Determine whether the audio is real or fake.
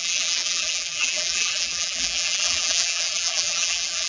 fake